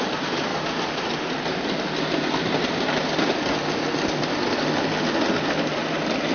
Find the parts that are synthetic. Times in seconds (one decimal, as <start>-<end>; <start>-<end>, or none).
none